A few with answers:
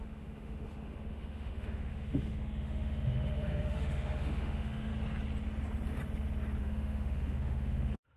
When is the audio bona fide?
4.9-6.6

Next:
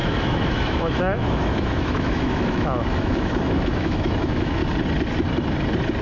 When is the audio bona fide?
4.6-6.0

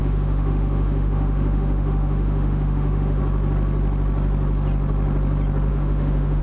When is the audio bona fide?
3.2-5.7

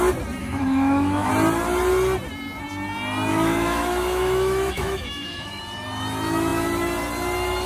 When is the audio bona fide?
0.0-0.4; 1.3-3.3; 5.6-7.7